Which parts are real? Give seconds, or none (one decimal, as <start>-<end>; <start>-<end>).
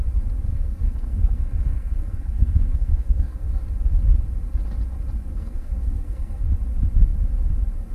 0.0-0.5; 3.6-5.3; 6.4-7.9